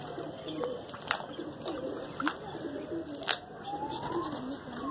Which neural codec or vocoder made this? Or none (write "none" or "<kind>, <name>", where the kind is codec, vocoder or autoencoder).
none